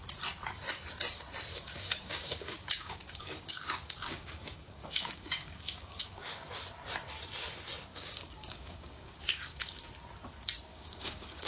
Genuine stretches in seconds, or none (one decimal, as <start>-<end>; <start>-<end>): 0.0-1.5; 6.5-7.9; 9.9-10.7